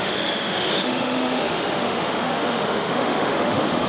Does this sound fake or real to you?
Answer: fake